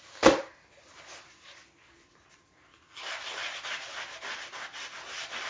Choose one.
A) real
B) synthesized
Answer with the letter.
A